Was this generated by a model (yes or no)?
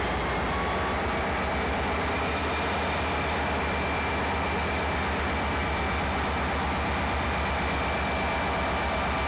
no